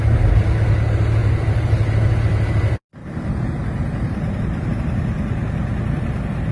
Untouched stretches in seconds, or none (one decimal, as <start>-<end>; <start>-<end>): 0.0-1.2; 2.1-3.0; 4.8-6.5